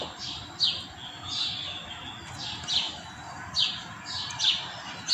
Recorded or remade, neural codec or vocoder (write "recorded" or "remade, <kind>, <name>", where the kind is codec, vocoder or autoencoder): recorded